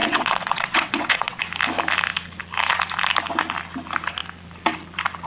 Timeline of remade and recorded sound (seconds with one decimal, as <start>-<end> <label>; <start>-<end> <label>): 0.0-1.4 remade; 1.4-5.3 recorded